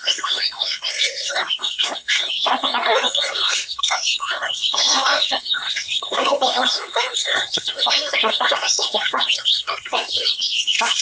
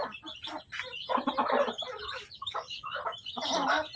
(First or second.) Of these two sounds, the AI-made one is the first